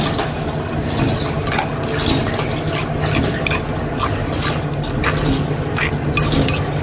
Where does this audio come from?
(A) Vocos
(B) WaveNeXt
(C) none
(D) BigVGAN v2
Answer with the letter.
C